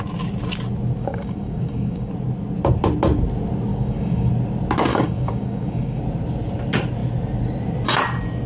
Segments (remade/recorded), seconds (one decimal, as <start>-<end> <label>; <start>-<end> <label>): 0.0-1.0 recorded; 1.0-2.1 remade; 2.1-3.7 recorded; 3.7-4.3 remade; 4.3-4.9 recorded; 4.9-6.0 remade; 6.0-8.5 recorded

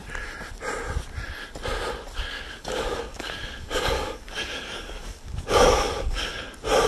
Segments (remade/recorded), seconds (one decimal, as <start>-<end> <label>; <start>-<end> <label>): 0.0-2.3 recorded; 2.3-6.4 remade; 6.4-6.9 recorded

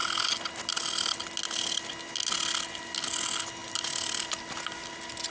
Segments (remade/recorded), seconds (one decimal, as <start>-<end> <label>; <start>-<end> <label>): 0.0-3.6 recorded; 3.6-4.5 remade; 4.5-5.3 recorded